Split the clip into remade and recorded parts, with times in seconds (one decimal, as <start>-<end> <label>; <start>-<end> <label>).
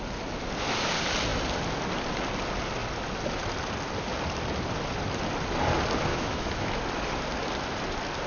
0.0-6.1 recorded; 6.1-6.8 remade; 6.8-8.3 recorded